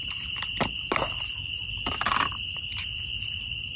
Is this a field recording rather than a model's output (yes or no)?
yes